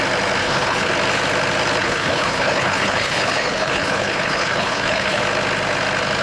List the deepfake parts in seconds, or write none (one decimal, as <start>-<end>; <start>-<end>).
0.4-0.9; 1.8-5.2